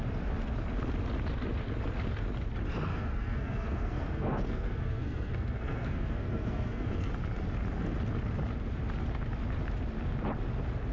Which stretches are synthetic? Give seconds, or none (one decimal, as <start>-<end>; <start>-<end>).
2.9-7.1